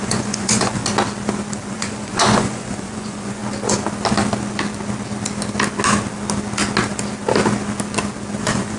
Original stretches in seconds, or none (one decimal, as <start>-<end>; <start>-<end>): 0.8-1.7; 3.4-8.4